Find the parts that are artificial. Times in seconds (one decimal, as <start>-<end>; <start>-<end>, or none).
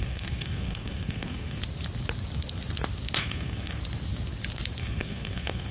0.0-1.6; 3.2-3.8; 4.8-5.7